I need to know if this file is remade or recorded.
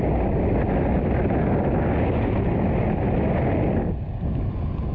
recorded